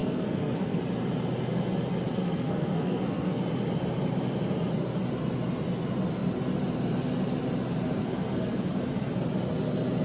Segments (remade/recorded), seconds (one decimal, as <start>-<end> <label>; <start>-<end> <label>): 0.0-0.8 remade; 0.8-2.2 recorded; 2.2-3.4 remade; 3.4-8.0 recorded; 8.0-8.7 remade; 8.7-10.0 recorded